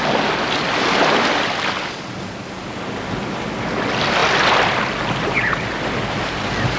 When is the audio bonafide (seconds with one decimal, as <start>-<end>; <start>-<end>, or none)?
0.0-6.8